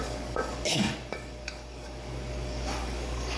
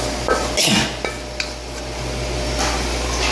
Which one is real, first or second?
second